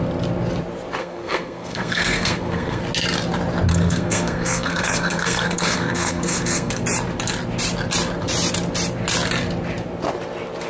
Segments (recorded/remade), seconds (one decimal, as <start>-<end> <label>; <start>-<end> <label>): 0.0-1.0 recorded; 1.0-2.8 remade; 2.8-3.7 recorded; 3.7-6.7 remade; 6.7-10.7 recorded